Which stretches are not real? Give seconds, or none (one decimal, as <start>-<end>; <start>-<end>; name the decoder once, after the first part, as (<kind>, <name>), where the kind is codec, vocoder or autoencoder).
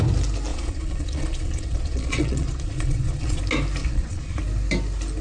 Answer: 0.5-3.4 (vocoder, Vocos); 3.8-4.4